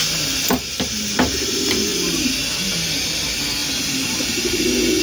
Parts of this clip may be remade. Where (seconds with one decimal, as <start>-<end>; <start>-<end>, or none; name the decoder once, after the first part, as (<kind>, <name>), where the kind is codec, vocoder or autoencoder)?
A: none

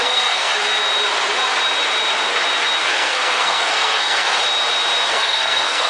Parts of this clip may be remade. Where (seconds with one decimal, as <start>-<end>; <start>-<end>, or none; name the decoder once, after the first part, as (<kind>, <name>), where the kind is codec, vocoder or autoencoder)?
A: 0.0-0.5 (codec, SNAC); 2.8-4.4; 5.1-5.9

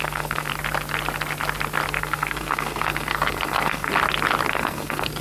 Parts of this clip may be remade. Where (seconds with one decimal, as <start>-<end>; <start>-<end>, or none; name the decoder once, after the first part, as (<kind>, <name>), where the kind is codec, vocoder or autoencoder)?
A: 0.0-0.5 (codec, SNAC); 2.0-3.9; 4.5-5.2

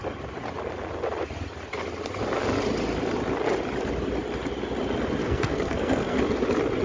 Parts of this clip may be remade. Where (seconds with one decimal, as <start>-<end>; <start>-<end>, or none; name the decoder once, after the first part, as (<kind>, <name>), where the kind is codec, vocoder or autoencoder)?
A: 5.2-6.2 (codec, SNAC)

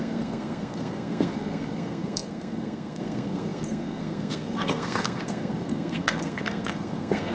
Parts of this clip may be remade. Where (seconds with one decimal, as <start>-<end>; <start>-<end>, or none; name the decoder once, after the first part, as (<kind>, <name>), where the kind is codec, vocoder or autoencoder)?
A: 0.0-7.3 (codec, SNAC)

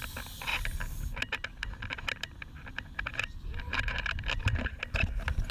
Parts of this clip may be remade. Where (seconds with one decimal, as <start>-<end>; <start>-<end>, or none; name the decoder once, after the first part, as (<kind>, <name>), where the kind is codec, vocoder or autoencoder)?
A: none

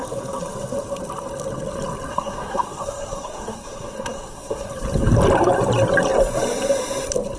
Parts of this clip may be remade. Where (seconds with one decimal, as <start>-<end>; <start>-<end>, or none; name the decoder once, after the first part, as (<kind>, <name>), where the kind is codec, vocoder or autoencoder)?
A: 2.1-4.7 (codec, SNAC)

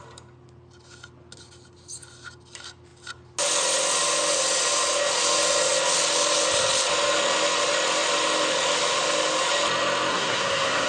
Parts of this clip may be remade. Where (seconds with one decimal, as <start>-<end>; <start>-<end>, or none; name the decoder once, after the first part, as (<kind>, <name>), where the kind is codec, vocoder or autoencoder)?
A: 10.1-10.9 (codec, SNAC)